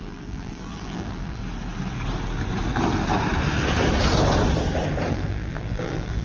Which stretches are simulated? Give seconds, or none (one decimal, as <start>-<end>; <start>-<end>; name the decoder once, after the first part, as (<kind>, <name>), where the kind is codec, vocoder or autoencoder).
0.0-1.4 (vocoder, BigVGAN v2); 5.1-6.2